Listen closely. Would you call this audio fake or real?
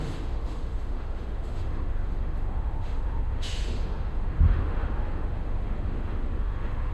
fake